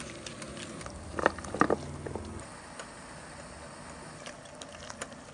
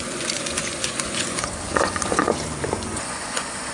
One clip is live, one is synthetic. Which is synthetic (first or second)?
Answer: second